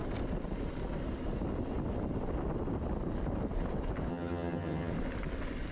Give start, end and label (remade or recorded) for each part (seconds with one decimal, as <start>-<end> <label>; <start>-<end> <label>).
0.0-4.1 recorded; 4.1-4.9 remade; 4.9-5.7 recorded